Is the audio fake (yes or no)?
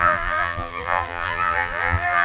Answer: yes